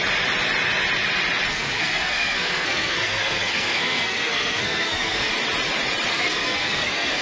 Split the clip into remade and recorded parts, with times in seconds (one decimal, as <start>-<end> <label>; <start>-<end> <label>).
0.0-1.5 recorded; 1.5-5.3 remade; 5.3-6.1 recorded; 6.1-7.2 remade